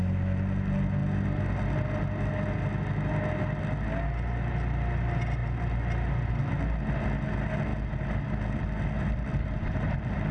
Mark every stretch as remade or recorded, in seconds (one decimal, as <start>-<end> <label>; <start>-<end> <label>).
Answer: 0.0-7.7 recorded; 7.7-10.3 remade